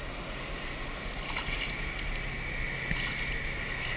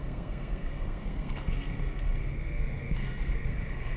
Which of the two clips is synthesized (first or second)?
second